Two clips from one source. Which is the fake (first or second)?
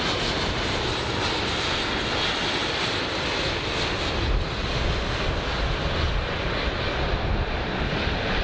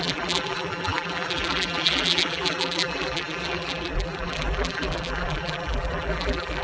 second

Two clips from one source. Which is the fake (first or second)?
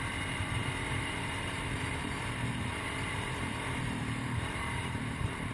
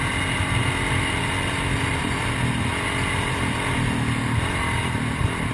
first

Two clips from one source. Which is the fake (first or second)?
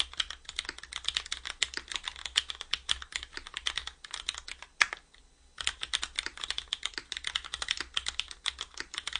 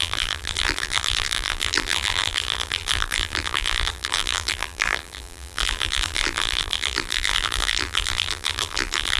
second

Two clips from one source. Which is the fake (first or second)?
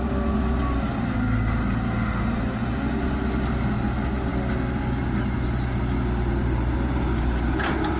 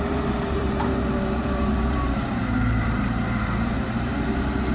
second